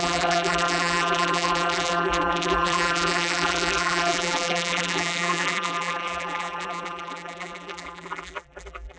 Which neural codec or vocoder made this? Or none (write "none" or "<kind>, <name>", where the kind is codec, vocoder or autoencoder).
vocoder, BigVGAN v2